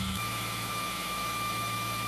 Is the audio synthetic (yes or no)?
yes